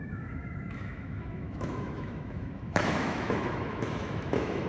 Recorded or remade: remade